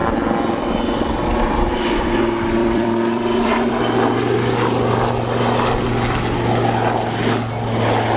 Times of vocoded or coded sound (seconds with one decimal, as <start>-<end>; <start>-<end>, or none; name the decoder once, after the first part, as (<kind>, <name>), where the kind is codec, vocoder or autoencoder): 2.6-3.7 (vocoder, BigVGAN v2)

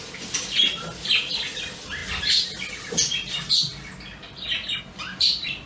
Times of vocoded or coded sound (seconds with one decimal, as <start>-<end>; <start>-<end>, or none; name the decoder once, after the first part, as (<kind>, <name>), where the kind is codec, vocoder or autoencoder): none

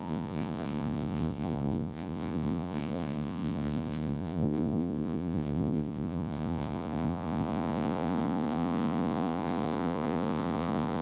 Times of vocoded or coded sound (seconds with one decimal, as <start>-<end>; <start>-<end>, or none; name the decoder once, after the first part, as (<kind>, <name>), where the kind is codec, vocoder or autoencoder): 0.0-11.0 (vocoder, Vocos)

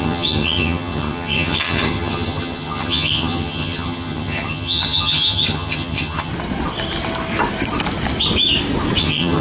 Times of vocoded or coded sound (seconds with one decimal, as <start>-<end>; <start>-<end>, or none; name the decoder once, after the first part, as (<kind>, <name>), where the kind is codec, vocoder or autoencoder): 0.0-6.3 (vocoder, HiFi-GAN); 9.0-9.4

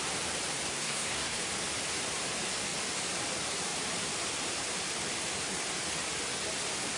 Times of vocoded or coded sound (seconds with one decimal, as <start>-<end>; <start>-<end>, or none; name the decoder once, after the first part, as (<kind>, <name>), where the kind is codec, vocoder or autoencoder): 0.7-1.4 (codec, SNAC)

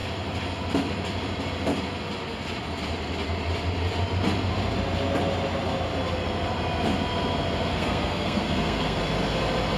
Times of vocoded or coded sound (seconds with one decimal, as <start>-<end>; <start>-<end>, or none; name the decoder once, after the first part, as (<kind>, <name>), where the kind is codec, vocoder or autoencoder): 7.7-9.0 (codec, SNAC)

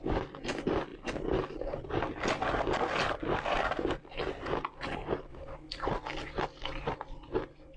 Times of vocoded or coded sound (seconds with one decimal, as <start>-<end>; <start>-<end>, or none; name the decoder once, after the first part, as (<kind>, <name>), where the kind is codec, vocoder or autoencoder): none